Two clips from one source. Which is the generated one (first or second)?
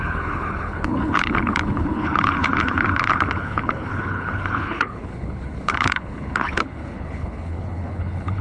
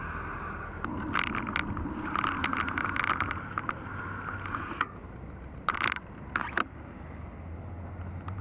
first